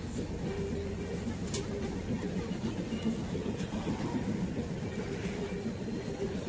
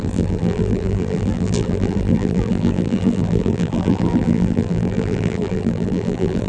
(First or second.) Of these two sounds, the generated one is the second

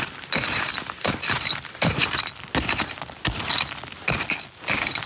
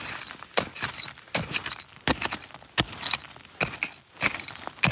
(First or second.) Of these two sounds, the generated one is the first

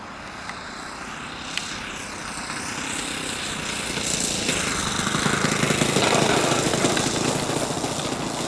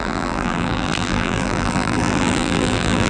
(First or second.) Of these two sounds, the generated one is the second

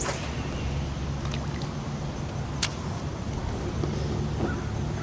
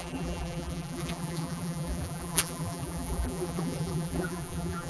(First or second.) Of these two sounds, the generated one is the second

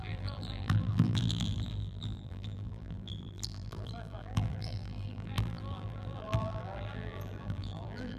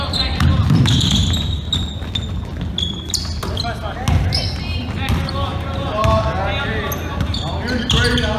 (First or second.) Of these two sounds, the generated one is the first